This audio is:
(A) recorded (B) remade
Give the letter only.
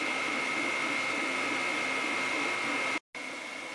A